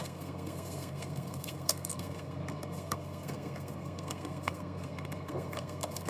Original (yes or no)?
no